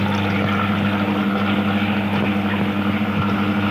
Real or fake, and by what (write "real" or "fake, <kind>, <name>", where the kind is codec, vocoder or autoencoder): real